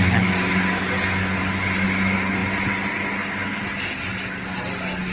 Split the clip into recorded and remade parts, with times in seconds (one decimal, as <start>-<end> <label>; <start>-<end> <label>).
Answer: 0.0-5.1 recorded